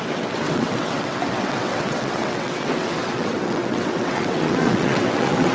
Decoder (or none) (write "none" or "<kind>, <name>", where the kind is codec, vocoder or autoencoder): vocoder, WaveNeXt